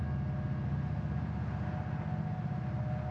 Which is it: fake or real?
real